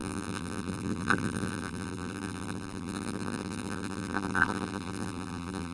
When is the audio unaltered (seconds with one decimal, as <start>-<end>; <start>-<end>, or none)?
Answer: none